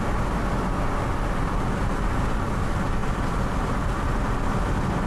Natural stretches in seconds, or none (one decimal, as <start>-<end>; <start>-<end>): 0.0-5.1

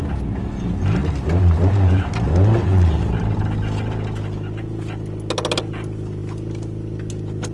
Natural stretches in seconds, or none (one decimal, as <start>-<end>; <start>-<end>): 0.0-7.5

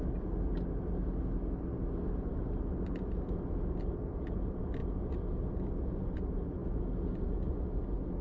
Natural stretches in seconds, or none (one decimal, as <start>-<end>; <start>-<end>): 0.0-8.2